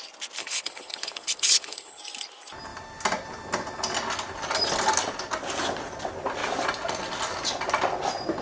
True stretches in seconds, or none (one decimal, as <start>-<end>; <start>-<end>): 0.0-0.4; 2.0-8.4